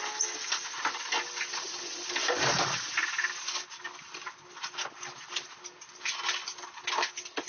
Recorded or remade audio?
recorded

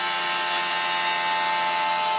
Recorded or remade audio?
recorded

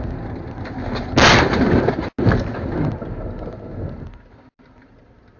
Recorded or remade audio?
recorded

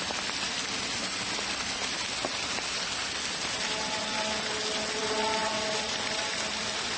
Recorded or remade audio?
recorded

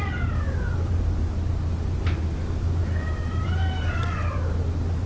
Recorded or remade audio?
remade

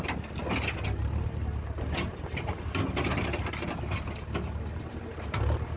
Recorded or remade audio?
recorded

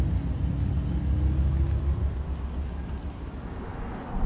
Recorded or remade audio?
recorded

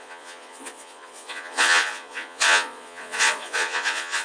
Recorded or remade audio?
remade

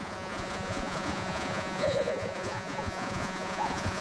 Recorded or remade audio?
remade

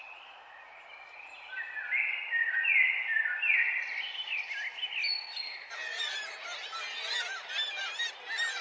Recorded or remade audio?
remade